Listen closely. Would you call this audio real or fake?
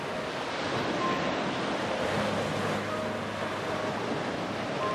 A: real